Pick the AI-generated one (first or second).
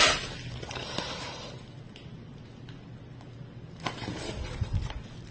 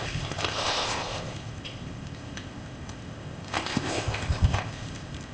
second